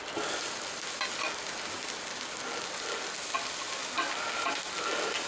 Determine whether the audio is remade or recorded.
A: recorded